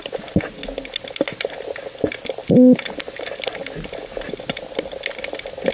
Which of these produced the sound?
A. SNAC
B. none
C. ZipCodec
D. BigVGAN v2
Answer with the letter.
B